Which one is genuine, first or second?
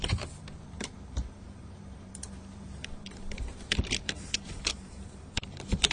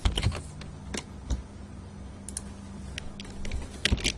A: second